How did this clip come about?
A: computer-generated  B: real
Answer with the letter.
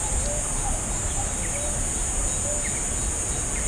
B